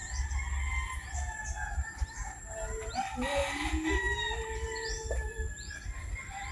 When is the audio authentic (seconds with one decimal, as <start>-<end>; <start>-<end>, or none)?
0.0-1.7; 3.4-6.5